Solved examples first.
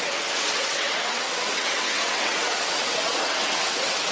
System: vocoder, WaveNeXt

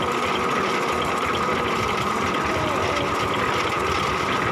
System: none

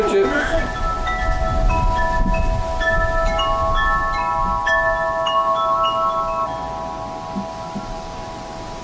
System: none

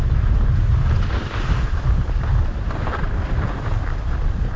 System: none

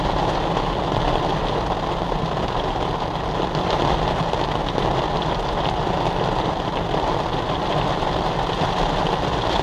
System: none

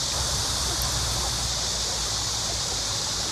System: none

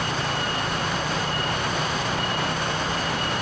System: none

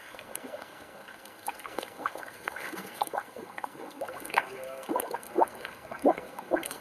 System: codec, SNAC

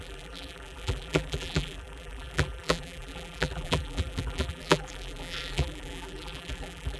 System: vocoder, BigVGAN v2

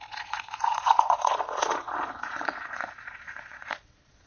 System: vocoder, Vocos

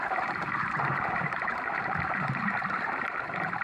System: vocoder, BigVGAN v2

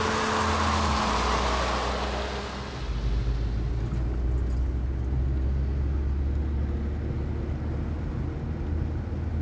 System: none